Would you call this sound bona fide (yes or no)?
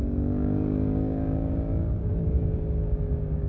no